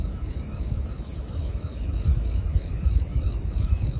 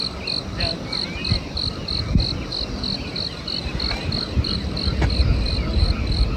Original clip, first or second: second